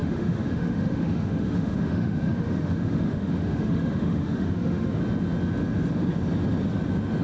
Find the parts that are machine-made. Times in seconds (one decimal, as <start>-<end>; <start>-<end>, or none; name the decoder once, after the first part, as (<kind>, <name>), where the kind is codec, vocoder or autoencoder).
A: 0.0-5.0 (autoencoder, DAC-VAE)